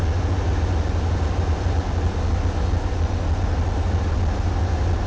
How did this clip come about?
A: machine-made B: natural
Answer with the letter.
B